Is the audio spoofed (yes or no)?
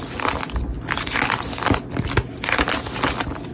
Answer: no